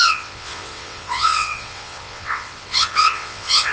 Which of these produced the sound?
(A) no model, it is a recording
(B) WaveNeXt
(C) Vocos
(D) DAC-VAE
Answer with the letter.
B